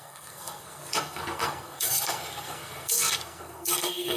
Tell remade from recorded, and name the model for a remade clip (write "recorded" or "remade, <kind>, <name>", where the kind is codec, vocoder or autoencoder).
remade, codec, SNAC